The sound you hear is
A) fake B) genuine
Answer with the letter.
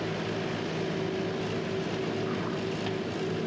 B